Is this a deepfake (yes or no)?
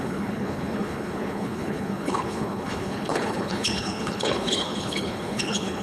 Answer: yes